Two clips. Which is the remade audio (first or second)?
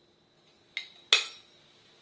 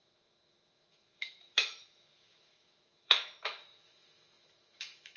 second